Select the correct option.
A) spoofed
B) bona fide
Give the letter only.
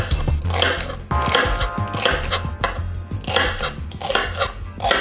B